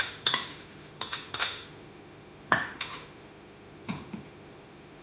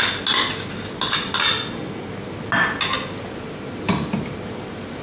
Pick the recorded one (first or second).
second